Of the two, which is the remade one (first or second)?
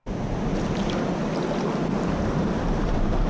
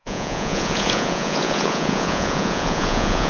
second